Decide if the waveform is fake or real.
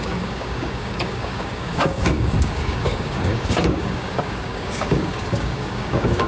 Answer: fake